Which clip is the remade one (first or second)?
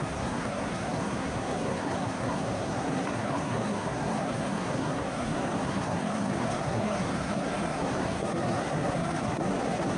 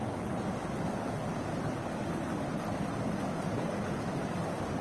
first